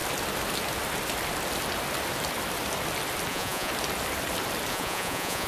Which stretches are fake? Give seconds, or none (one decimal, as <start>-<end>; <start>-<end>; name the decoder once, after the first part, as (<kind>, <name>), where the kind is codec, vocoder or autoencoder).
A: 3.3-3.7 (vocoder, Vocos); 4.7-5.5